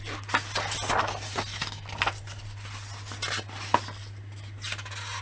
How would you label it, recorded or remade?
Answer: recorded